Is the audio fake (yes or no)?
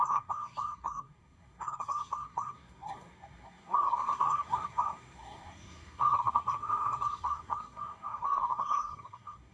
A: yes